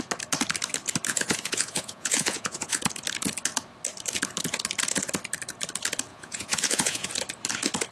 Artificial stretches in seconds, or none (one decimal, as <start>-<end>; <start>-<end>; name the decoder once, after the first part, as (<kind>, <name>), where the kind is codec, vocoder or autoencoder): 1.1-2.8 (vocoder, Vocos); 6.1-7.1